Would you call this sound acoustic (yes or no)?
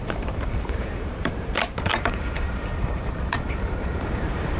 no